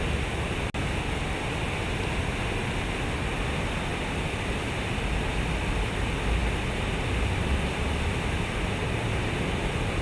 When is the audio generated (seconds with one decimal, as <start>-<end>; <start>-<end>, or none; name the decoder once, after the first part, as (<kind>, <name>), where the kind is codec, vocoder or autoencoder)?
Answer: 3.9-4.9 (vocoder, BigVGAN v2)